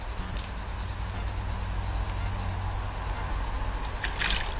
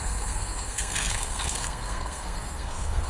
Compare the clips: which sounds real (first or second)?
first